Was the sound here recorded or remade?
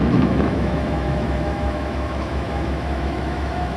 remade